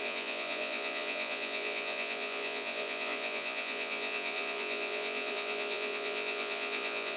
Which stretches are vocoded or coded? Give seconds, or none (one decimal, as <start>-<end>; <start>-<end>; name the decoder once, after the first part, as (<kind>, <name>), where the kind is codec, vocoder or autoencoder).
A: 0.0-7.2 (vocoder, Vocos)